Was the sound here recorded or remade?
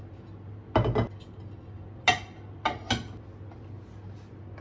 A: recorded